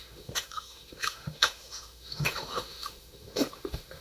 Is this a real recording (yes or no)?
no